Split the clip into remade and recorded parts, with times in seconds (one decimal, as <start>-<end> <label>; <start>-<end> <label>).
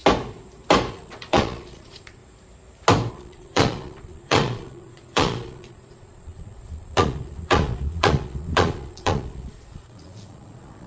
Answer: 0.0-0.9 recorded; 0.9-2.2 remade; 2.2-3.1 recorded; 3.1-10.9 remade